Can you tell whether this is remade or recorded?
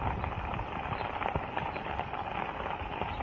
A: recorded